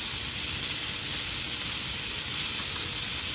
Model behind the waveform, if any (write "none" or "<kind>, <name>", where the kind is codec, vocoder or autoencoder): none